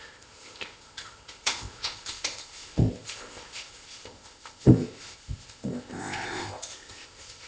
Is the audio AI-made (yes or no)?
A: yes